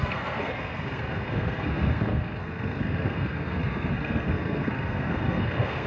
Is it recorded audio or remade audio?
remade